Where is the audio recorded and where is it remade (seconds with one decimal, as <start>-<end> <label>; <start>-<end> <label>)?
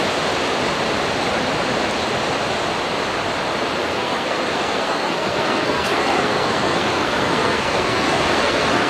0.0-3.8 recorded; 3.8-8.9 remade